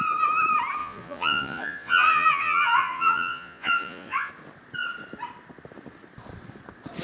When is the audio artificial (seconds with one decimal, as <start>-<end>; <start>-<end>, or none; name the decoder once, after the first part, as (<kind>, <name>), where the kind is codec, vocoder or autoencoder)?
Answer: 0.8-4.3 (vocoder, Vocos)